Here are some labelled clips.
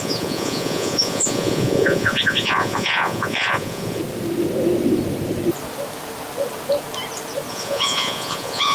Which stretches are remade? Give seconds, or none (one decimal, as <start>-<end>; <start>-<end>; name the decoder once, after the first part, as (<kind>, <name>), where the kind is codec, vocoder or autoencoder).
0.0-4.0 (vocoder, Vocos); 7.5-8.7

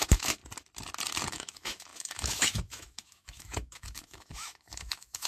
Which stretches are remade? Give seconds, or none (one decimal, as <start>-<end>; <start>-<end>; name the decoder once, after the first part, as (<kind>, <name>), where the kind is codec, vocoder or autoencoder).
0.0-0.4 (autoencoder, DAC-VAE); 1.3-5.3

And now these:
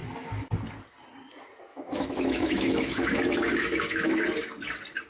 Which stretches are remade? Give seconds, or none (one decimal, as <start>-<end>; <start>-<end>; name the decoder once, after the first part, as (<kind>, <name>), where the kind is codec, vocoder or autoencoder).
1.7-4.1 (autoencoder, DAC-VAE)

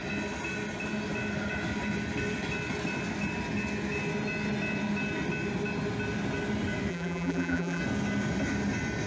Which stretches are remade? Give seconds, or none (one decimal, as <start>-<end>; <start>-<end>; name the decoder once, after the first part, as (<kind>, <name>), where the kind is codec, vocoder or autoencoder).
6.9-7.8 (vocoder, BigVGAN v2)